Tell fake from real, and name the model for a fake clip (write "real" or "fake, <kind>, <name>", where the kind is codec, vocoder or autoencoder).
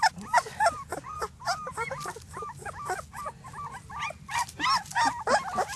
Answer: real